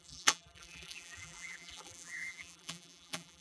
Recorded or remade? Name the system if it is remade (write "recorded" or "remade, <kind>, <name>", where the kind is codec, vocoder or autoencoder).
remade, vocoder, BigVGAN v2